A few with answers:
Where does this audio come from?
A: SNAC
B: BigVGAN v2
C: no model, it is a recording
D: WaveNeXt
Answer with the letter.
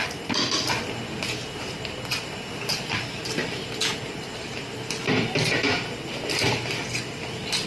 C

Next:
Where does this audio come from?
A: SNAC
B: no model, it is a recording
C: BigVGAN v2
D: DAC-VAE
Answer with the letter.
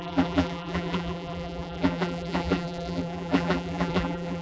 C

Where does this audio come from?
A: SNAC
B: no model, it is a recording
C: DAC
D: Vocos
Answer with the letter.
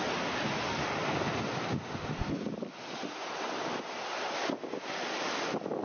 B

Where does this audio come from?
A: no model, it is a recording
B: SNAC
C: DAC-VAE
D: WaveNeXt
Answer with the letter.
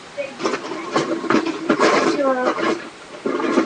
A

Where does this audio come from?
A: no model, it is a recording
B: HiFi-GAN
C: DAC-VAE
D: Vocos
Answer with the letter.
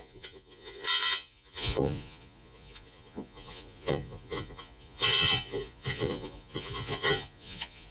D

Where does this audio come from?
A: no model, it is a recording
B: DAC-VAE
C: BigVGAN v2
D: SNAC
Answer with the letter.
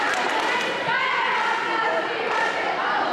A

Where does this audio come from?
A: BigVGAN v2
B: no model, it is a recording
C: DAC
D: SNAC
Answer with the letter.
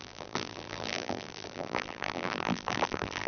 A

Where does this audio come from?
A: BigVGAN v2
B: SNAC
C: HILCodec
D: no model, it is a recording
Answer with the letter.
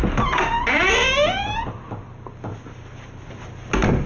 D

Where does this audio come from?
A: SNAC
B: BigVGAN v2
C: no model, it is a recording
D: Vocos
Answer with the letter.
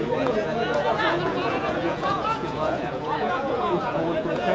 D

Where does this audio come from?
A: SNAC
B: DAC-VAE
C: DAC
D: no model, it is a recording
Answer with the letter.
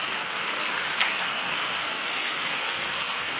A